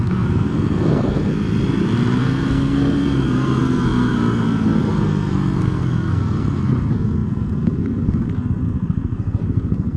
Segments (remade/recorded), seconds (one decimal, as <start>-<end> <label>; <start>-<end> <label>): 0.0-1.3 remade; 1.3-2.2 recorded; 2.2-10.0 remade